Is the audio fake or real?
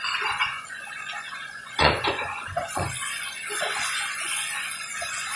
fake